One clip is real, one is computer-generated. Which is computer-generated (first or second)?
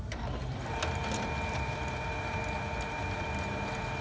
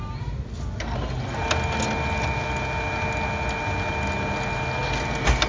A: first